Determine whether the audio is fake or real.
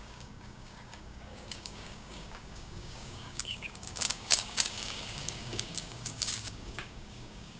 fake